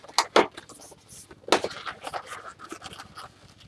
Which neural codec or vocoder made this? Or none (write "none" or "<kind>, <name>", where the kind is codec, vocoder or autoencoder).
none